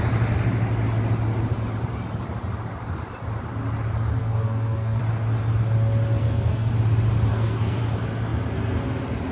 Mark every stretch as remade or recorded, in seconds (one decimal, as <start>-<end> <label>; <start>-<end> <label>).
0.0-4.2 recorded; 4.2-5.0 remade; 5.0-6.2 recorded; 6.2-6.7 remade; 6.7-7.3 recorded; 7.3-7.8 remade; 7.8-9.3 recorded